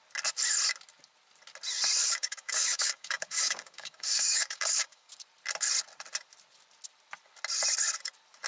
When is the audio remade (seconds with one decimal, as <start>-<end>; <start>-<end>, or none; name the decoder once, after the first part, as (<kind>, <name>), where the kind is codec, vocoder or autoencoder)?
2.0-5.1 (codec, DAC)